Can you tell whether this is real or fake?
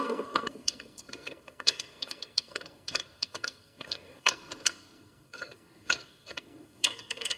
fake